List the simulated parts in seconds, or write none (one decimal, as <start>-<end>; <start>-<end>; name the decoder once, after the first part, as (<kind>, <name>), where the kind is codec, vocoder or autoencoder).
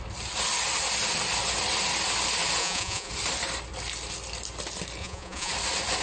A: 2.6-3.1 (vocoder, Vocos); 5.0-5.5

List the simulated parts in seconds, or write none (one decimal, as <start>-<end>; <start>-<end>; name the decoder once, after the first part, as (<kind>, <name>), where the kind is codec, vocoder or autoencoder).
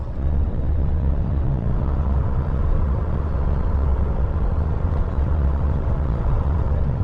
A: 0.0-7.0 (vocoder, WaveNeXt)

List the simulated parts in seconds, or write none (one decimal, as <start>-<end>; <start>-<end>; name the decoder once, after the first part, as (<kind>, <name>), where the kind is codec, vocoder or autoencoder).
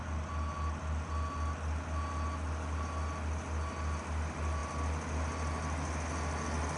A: none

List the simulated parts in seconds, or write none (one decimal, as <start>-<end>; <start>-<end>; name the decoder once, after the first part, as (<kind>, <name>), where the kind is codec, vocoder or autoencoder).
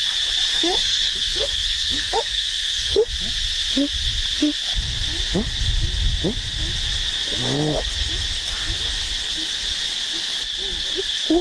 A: 0.5-3.1 (codec, SNAC)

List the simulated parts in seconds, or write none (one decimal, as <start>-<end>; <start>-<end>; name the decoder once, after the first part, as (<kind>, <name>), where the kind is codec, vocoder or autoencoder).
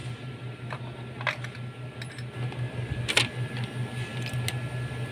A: 0.0-0.8 (vocoder, BigVGAN v2)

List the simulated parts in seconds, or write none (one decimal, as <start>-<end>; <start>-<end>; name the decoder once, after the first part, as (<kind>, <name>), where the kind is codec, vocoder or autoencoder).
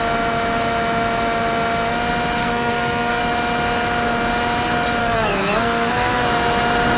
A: 2.4-3.2 (codec, SNAC); 5.0-6.2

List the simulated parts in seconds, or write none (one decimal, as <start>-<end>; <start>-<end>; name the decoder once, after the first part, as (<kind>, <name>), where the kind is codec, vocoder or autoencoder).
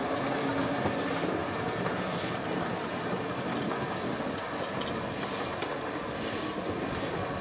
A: none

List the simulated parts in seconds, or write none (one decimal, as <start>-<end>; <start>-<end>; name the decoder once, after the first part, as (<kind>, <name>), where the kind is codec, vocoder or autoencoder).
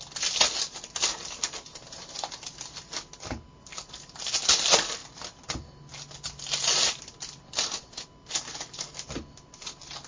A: none